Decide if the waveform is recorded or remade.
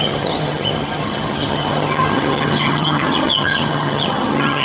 remade